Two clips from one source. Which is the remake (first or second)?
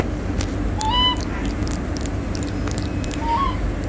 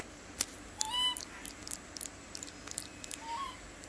second